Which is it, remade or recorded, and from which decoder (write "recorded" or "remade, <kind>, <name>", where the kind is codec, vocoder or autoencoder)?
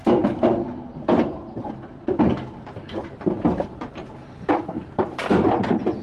remade, vocoder, BigVGAN v2